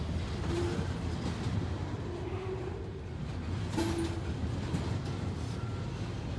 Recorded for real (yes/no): yes